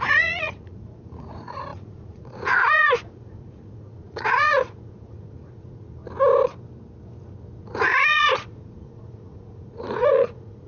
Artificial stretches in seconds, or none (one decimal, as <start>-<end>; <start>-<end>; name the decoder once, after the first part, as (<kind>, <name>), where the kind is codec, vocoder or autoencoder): 0.0-6.0 (vocoder, Vocos); 7.6-10.7